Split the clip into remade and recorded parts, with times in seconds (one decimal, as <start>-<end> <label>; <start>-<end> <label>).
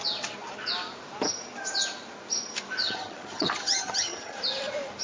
0.0-2.8 recorded; 2.8-4.4 remade; 4.4-5.0 recorded